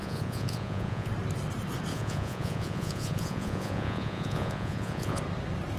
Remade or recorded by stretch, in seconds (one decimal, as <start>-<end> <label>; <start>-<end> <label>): 0.0-1.1 remade; 1.1-1.9 recorded; 1.9-5.2 remade; 5.2-5.8 recorded